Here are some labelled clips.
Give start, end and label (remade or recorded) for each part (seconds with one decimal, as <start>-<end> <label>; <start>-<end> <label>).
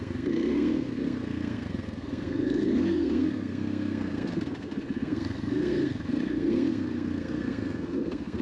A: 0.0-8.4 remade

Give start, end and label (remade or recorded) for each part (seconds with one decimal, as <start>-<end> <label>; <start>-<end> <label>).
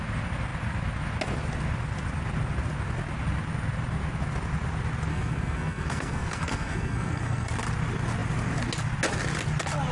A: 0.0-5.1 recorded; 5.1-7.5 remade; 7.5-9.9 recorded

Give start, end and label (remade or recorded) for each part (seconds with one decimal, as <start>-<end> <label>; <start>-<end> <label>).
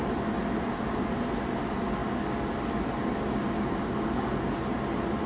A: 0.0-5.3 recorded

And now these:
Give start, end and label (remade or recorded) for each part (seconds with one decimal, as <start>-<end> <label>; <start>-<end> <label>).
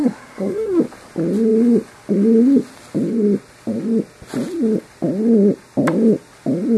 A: 0.0-0.8 remade; 0.8-6.8 recorded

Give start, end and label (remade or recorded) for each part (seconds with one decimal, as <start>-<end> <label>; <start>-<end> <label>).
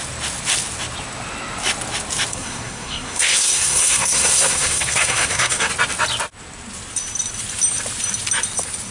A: 0.0-2.3 recorded; 2.3-5.7 remade; 5.7-8.9 recorded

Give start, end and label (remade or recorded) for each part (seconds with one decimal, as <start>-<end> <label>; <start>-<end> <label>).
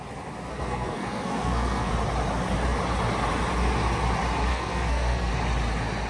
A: 0.0-0.5 recorded; 0.5-1.9 remade; 1.9-4.5 recorded; 4.5-5.3 remade; 5.3-6.1 recorded